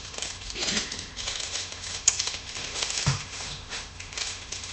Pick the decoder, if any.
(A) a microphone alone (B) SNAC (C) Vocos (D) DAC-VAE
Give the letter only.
D